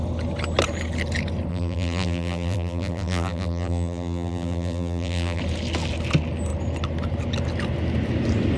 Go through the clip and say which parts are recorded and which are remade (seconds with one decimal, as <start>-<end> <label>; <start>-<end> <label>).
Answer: 0.0-1.5 recorded; 1.5-5.4 remade; 5.4-8.6 recorded